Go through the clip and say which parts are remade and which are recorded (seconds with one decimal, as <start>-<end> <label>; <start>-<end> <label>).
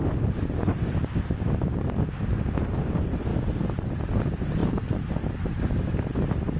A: 0.0-3.3 recorded; 3.3-3.9 remade; 3.9-4.6 recorded; 4.6-6.6 remade